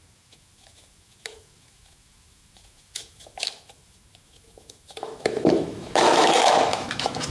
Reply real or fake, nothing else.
fake